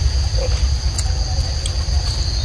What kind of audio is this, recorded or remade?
recorded